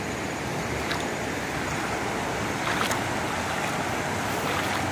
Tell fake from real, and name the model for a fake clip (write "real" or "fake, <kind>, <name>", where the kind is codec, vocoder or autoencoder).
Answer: real